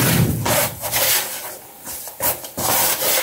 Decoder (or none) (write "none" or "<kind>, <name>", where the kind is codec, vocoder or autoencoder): none